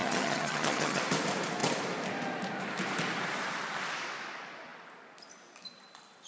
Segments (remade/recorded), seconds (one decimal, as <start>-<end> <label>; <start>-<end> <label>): 0.0-1.0 remade; 1.0-6.3 recorded